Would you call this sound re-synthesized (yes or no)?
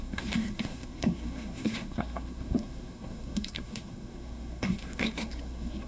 yes